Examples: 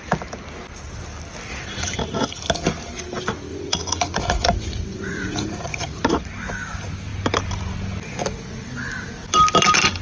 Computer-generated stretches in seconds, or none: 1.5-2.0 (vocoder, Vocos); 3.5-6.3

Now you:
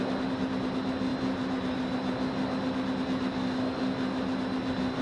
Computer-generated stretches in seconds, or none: none